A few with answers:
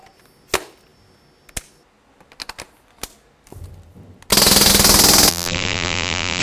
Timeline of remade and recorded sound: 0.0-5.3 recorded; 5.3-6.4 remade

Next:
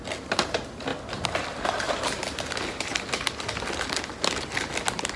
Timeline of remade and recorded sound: 0.0-0.9 recorded; 0.9-4.0 remade; 4.0-5.2 recorded

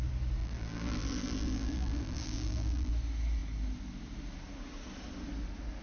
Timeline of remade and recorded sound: 0.0-0.4 recorded; 0.4-2.9 remade; 2.9-5.8 recorded

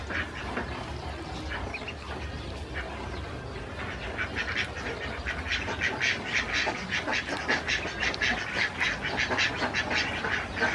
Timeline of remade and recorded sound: 0.0-0.4 recorded; 0.4-1.2 remade; 1.2-10.7 recorded

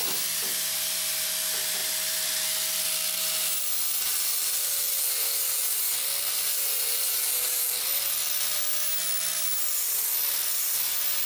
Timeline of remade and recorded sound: 0.0-5.6 recorded; 5.6-7.1 remade; 7.1-11.3 recorded

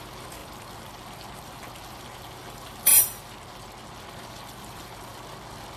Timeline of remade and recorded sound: 0.0-2.9 remade; 2.9-4.1 recorded; 4.1-5.1 remade; 5.1-5.8 recorded

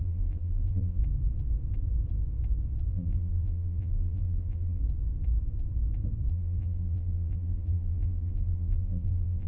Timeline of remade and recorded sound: 0.0-1.0 remade; 1.0-2.9 recorded; 2.9-4.8 remade; 4.8-6.3 recorded; 6.3-9.5 remade